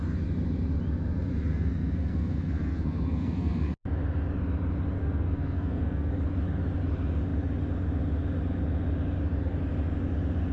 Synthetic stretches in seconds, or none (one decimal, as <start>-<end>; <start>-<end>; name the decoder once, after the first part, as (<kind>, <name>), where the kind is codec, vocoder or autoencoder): 1.5-3.7 (codec, SNAC); 5.0-6.1